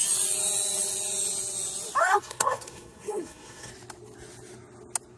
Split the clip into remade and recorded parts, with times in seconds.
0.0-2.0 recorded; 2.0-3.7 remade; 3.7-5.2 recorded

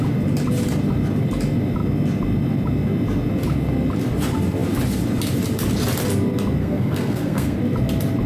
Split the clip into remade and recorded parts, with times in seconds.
0.0-6.6 recorded; 6.6-7.6 remade; 7.6-8.3 recorded